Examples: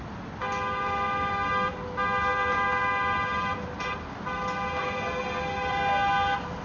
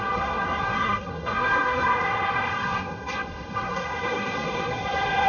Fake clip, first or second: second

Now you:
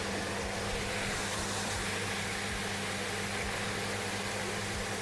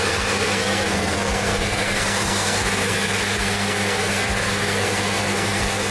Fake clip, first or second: second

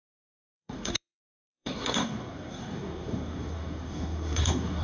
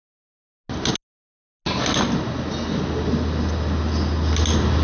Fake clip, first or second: first